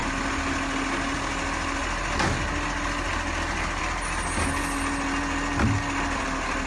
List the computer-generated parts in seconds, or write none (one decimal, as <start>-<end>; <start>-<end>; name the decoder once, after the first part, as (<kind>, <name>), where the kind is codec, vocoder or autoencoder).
none